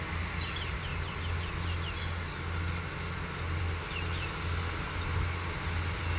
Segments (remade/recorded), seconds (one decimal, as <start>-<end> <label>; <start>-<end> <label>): 0.0-6.2 recorded